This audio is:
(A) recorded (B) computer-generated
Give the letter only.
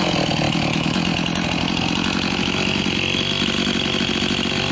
A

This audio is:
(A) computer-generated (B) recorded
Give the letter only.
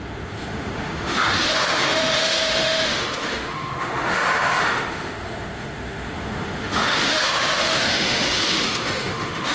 A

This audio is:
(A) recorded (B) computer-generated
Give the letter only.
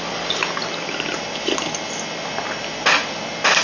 A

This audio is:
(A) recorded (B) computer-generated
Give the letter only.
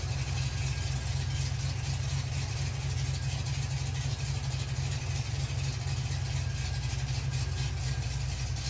A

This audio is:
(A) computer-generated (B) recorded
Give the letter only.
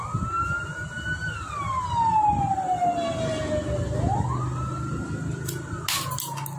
B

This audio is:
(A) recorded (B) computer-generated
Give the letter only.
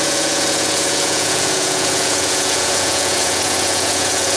B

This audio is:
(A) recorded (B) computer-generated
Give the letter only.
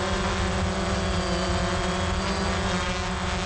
A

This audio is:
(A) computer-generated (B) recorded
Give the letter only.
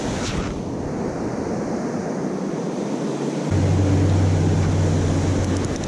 B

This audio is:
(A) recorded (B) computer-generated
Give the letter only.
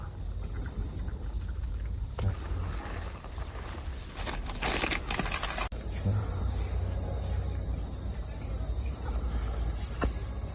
A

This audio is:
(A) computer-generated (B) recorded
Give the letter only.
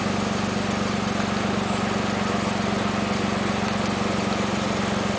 B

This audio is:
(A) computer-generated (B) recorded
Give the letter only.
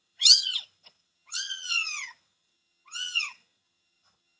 A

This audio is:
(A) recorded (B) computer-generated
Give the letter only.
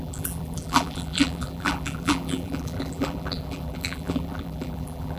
B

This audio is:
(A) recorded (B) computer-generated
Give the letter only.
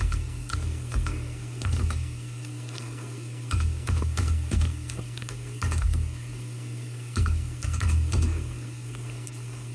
B